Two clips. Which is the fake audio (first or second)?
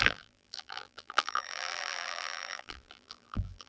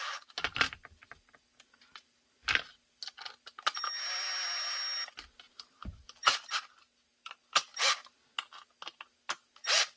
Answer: first